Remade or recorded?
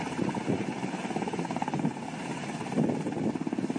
recorded